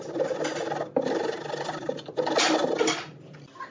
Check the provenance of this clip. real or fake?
real